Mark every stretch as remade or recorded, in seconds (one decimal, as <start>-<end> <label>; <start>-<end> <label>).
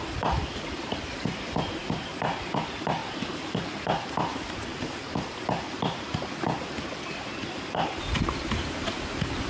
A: 0.0-3.0 remade; 3.0-4.1 recorded; 4.1-9.5 remade